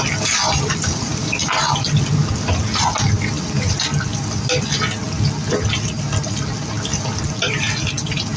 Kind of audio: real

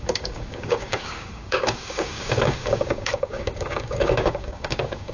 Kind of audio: fake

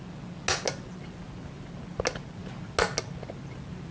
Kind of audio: real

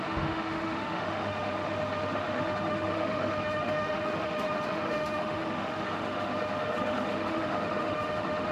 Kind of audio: fake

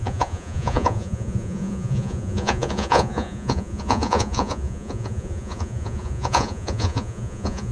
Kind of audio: fake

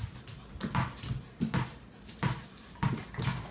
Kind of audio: real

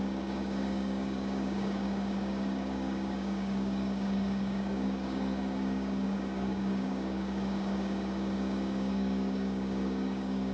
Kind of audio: fake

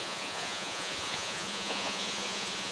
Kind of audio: fake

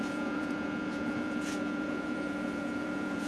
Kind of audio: fake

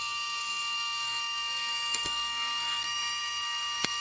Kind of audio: fake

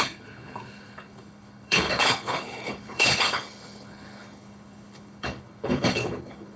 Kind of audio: fake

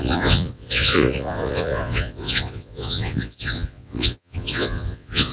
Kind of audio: fake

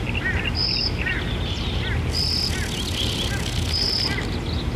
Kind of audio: real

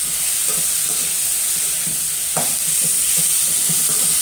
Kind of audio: real